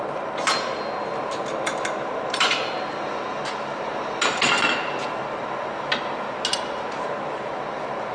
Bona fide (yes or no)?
yes